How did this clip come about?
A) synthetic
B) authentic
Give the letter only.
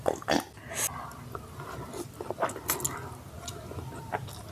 B